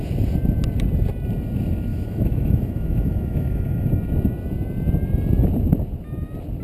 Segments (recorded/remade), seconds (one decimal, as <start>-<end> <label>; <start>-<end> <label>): 0.0-1.9 recorded; 1.9-3.9 remade; 3.9-6.6 recorded